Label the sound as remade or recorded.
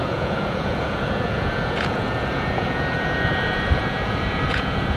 remade